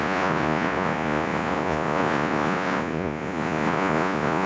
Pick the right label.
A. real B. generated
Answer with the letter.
B